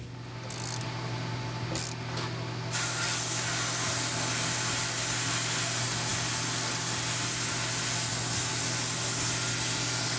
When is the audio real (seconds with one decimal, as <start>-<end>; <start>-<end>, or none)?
0.0-10.2